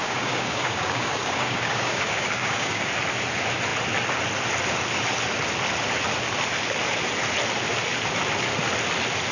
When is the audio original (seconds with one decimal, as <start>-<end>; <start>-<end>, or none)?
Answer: 2.9-9.3